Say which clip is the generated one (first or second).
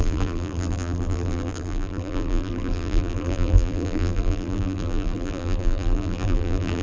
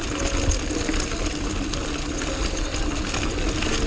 first